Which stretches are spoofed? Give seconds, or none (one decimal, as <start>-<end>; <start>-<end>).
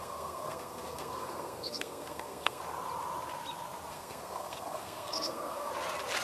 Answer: 0.0-2.6; 3.9-5.7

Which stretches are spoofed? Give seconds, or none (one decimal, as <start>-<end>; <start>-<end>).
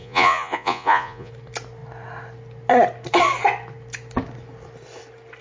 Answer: 0.0-1.3